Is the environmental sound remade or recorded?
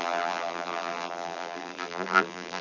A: remade